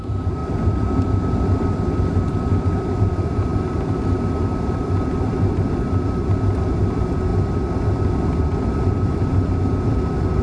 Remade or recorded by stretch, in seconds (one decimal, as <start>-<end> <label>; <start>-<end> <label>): 0.0-10.4 remade